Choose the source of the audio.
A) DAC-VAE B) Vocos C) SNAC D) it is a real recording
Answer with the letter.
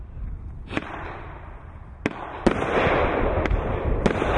D